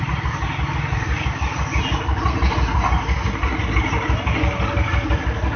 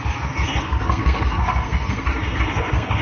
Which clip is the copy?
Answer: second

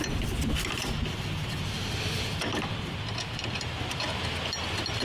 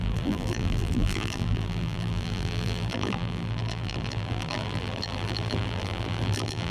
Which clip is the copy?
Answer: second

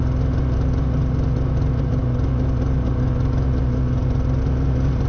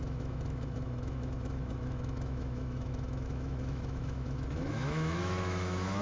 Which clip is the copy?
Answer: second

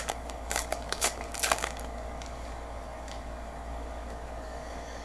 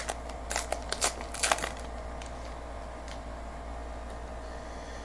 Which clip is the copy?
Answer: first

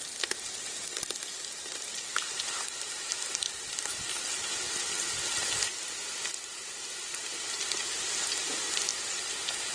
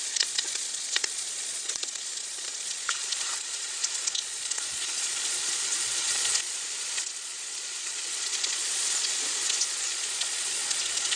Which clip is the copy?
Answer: second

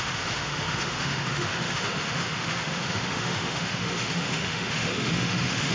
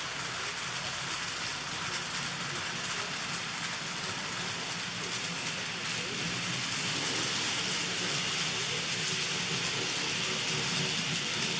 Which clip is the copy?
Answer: first